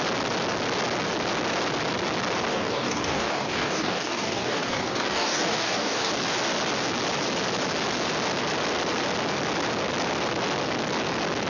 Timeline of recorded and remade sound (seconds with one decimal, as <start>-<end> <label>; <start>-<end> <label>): 0.0-2.5 recorded; 2.5-6.1 remade; 6.1-11.5 recorded